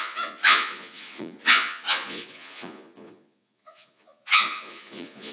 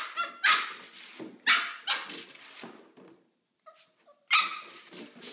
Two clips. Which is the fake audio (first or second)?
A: first